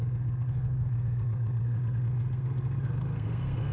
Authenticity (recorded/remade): remade